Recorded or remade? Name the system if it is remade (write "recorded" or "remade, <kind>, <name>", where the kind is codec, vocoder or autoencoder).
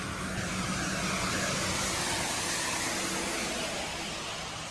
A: recorded